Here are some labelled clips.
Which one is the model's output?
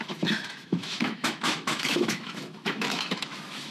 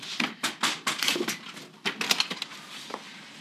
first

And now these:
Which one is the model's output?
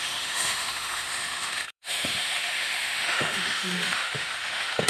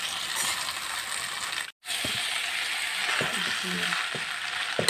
first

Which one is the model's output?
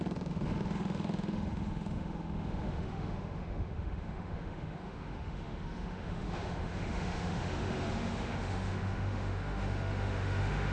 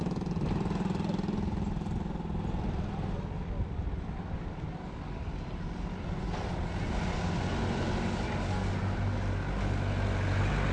first